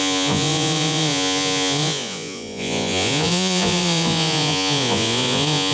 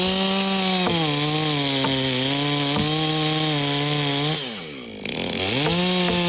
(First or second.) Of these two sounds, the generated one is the first